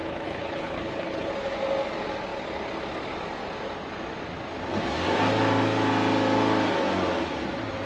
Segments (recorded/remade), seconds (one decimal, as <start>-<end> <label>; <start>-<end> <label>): 0.0-1.3 remade; 1.3-7.9 recorded